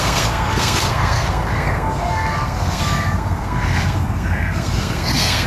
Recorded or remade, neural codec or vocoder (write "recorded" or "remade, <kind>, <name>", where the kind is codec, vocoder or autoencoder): remade, codec, SNAC